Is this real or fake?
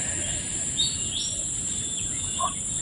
real